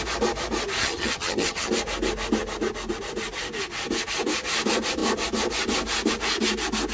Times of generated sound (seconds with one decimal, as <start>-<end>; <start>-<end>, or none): 0.8-1.7